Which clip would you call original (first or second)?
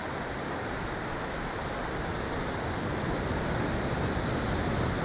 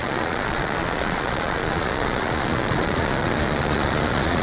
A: first